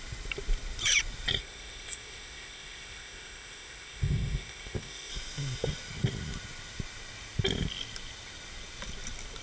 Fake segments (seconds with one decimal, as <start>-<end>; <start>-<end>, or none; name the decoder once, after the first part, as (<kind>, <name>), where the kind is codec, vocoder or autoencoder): 1.4-5.1 (codec, ZipCodec)